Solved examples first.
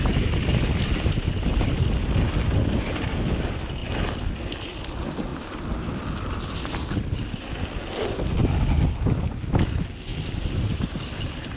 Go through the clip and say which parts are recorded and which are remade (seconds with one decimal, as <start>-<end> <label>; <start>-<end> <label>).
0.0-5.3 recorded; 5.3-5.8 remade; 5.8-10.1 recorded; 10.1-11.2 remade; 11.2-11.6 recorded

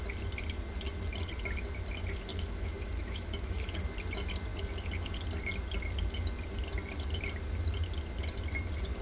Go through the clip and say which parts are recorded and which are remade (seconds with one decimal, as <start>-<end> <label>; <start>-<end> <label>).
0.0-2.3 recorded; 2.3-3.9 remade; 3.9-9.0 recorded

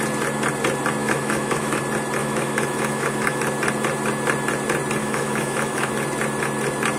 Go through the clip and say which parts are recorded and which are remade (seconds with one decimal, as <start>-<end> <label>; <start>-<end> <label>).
0.0-1.0 recorded; 1.0-1.8 remade; 1.8-2.2 recorded; 2.2-3.4 remade; 3.4-5.0 recorded; 5.0-5.9 remade; 5.9-7.0 recorded

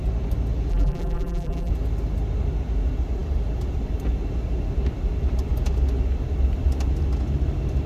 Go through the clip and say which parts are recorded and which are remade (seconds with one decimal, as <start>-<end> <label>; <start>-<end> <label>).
0.0-0.7 recorded; 0.7-1.7 remade; 1.7-7.9 recorded

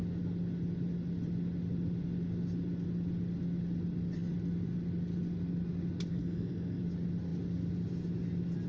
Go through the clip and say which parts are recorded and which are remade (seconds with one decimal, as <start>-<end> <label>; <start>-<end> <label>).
0.0-6.1 recorded; 6.1-6.8 remade; 6.8-8.7 recorded

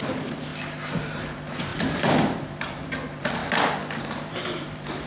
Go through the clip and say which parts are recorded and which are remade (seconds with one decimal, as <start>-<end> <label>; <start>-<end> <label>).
0.0-0.5 remade; 0.5-1.0 recorded; 1.0-3.4 remade; 3.4-4.0 recorded; 4.0-5.1 remade

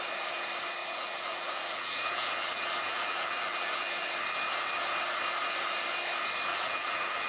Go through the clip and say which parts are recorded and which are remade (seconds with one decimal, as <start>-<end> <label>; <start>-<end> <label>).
0.0-0.8 recorded; 0.8-4.1 remade; 4.1-6.5 recorded; 6.5-7.3 remade